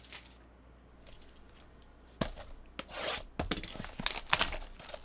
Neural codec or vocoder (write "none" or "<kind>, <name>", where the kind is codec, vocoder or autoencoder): none